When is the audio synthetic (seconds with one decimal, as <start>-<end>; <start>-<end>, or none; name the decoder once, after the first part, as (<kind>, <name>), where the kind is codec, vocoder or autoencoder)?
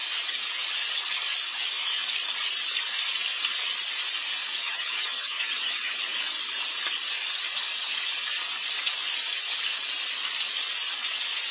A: 4.6-5.9 (vocoder, HiFi-GAN)